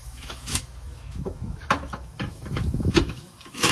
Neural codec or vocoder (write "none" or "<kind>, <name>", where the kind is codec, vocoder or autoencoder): autoencoder, DAC-VAE